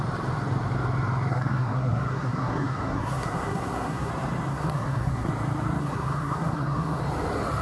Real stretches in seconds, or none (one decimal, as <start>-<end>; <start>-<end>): 0.0-1.3; 4.1-4.5; 5.3-5.8; 7.0-7.6